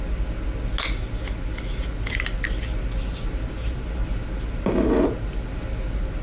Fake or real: real